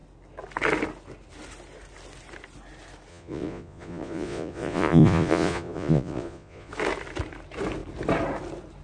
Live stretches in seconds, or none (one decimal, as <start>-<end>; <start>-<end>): 0.0-3.1; 6.7-8.8